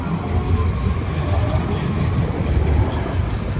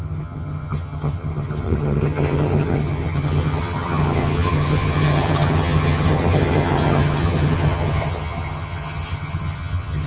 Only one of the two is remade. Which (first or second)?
second